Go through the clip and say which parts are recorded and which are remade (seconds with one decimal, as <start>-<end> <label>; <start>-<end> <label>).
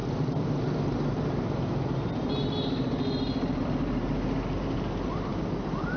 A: 0.0-6.0 recorded